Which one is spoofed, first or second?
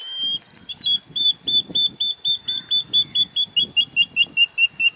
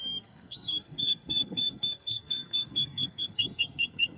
second